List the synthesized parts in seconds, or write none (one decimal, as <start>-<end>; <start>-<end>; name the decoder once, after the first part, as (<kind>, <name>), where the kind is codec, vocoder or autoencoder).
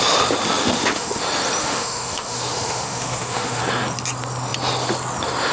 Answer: 0.6-1.2 (autoencoder, DAC-VAE); 1.6-3.6